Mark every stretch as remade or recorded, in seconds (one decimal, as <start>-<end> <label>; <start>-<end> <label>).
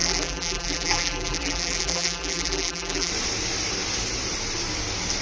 0.0-3.1 remade; 3.1-5.2 recorded